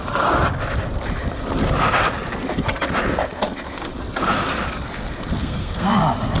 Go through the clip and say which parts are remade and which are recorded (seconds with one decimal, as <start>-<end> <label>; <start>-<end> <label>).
0.0-5.4 recorded; 5.4-6.0 remade; 6.0-6.4 recorded